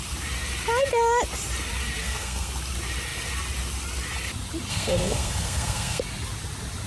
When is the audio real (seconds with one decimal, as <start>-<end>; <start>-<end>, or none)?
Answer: 0.0-2.0; 2.5-4.7; 6.0-6.9